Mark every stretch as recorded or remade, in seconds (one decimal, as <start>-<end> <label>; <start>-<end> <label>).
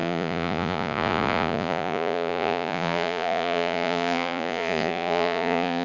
0.0-5.8 remade